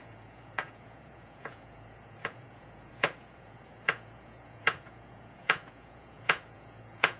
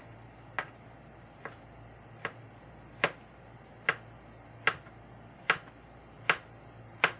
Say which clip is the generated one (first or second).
first